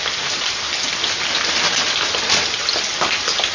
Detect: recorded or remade recorded